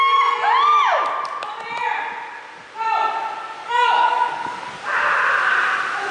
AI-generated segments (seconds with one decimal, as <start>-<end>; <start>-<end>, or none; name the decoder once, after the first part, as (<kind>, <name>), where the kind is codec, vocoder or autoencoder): 3.6-4.7 (codec, DAC)